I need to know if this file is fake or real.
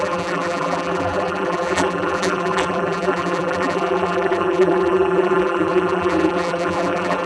fake